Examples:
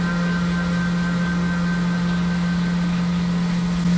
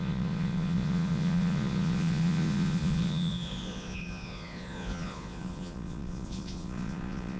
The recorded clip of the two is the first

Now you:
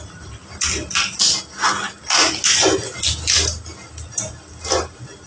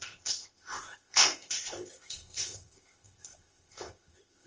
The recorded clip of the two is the first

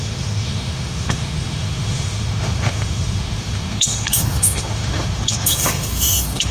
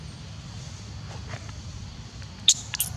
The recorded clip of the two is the second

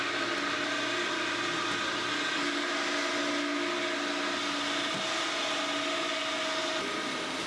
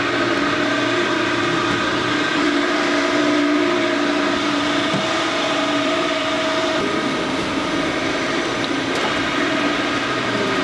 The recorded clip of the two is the first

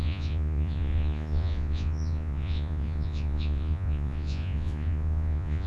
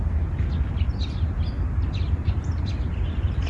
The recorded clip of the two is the second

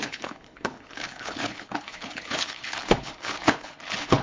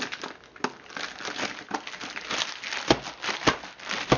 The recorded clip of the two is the second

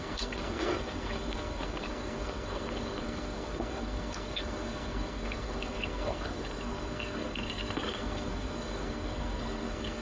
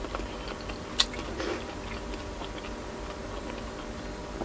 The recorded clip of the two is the second